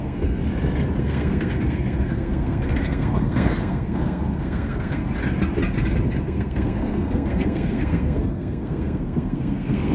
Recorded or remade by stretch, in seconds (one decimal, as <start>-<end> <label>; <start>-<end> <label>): 0.0-0.4 remade; 0.4-1.0 recorded; 1.0-5.0 remade; 5.0-6.2 recorded; 6.2-9.9 remade

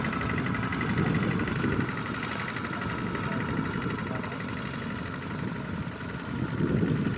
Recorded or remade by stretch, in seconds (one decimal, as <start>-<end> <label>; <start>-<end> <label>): 0.0-7.2 recorded